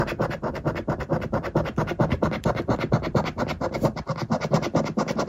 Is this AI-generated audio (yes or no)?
no